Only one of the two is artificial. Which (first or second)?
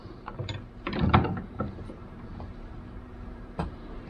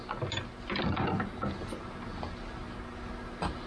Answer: first